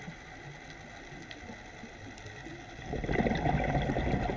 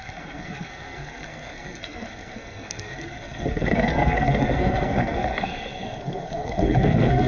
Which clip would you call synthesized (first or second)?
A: second